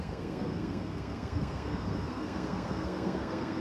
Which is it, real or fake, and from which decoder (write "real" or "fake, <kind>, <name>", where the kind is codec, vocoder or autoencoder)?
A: fake, codec, SNAC